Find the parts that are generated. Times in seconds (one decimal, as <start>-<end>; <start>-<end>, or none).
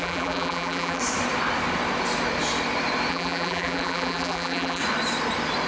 0.0-1.0; 3.1-4.8